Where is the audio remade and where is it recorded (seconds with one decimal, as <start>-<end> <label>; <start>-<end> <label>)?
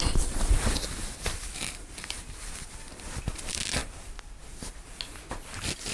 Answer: 0.0-5.9 recorded